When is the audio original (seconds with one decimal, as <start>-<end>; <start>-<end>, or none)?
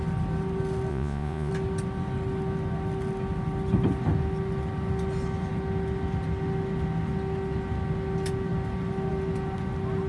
0.0-0.9; 1.5-10.1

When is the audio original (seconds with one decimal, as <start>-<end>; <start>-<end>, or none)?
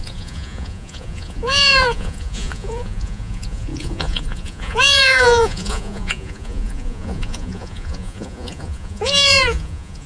none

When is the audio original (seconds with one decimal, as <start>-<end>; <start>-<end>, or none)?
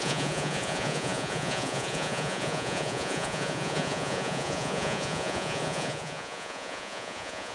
none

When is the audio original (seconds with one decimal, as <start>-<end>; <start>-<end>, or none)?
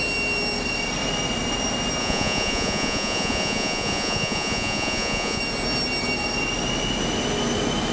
0.0-2.0; 5.4-7.9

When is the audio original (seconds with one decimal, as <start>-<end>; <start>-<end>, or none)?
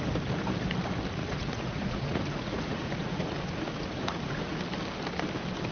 0.0-1.2; 4.6-5.7